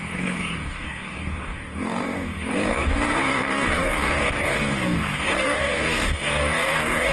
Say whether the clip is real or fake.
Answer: fake